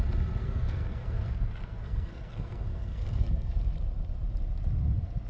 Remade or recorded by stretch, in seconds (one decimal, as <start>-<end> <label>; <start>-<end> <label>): 0.0-0.4 recorded; 0.4-3.6 remade; 3.6-5.3 recorded

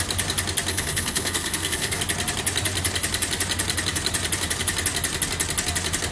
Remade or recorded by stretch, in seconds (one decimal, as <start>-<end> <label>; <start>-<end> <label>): 0.0-0.7 recorded; 0.7-2.0 remade; 2.0-6.1 recorded

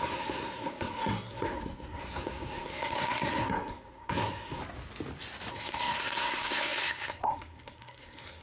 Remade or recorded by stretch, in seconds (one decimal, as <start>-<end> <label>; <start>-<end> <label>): 0.0-4.6 remade; 4.6-5.5 recorded; 5.5-8.4 remade

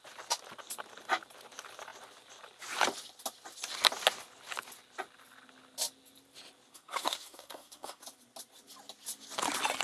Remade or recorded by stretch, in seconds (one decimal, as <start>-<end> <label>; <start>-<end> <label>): 0.0-6.7 recorded; 6.7-8.0 remade; 8.0-9.8 recorded

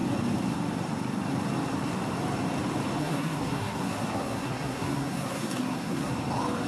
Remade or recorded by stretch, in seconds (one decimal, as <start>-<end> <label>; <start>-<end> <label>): 0.0-3.0 recorded; 3.0-6.1 remade; 6.1-6.7 recorded